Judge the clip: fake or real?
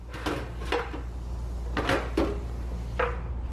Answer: real